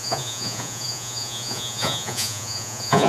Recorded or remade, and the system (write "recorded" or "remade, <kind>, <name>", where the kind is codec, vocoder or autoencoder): remade, vocoder, Vocos